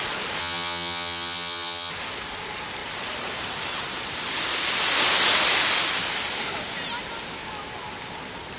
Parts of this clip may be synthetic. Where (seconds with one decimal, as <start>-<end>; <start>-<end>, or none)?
0.4-1.9